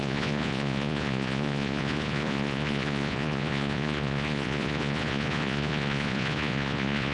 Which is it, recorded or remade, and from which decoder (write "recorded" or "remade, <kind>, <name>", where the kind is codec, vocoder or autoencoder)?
remade, vocoder, Vocos